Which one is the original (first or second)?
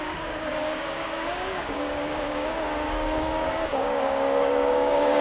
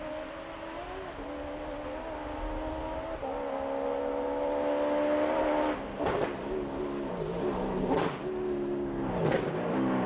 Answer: second